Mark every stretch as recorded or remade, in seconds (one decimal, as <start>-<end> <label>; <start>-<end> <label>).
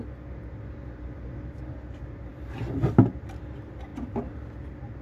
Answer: 0.0-5.0 recorded